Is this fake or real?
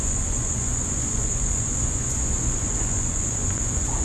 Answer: fake